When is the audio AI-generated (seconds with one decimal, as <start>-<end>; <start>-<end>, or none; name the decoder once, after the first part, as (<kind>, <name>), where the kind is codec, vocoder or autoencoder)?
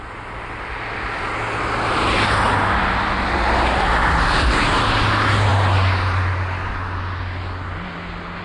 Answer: none